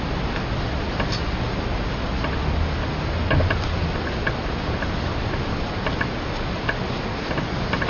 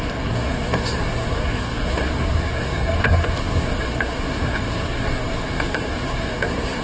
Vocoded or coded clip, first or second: second